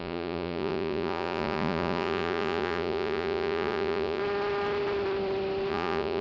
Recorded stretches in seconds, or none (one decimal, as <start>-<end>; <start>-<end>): 4.2-5.7